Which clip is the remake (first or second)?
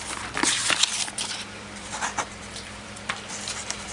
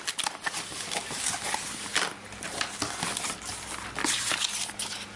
first